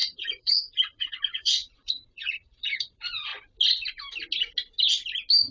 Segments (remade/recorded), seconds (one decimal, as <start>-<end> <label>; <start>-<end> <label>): 0.0-3.3 remade; 3.3-5.5 recorded